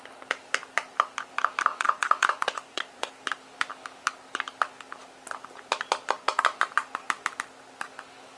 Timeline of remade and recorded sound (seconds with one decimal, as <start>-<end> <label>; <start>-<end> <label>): 0.0-1.7 recorded; 1.7-3.1 remade; 3.1-8.4 recorded